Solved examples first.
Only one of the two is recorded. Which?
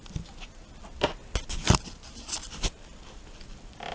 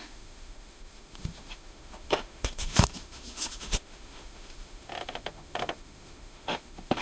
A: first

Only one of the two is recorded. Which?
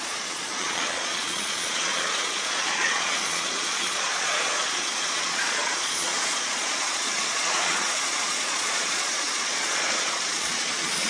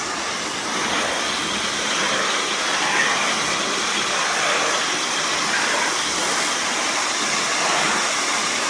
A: second